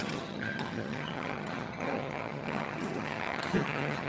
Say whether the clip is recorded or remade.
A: remade